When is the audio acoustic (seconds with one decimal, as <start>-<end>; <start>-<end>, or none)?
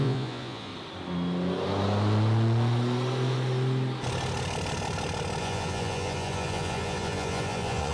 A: 0.7-5.4